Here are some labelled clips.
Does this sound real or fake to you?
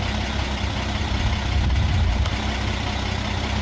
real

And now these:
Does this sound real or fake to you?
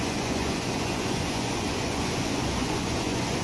fake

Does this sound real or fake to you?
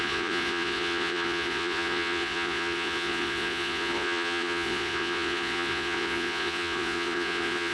fake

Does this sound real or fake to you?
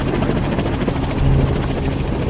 real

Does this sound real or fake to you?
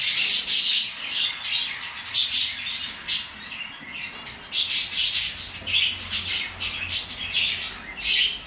real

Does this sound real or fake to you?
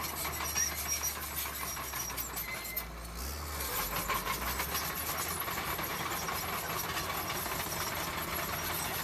real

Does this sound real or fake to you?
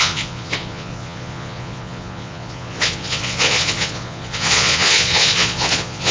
fake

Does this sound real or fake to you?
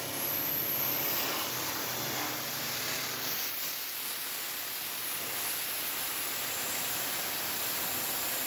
real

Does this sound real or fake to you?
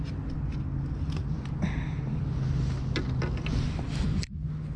real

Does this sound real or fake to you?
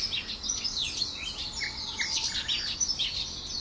real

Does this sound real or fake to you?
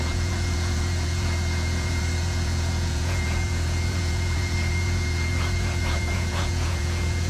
fake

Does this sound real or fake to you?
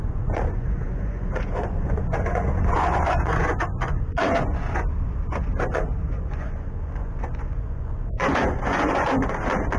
fake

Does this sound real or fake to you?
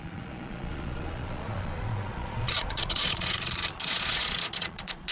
fake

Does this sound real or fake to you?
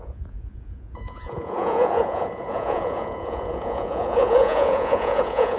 fake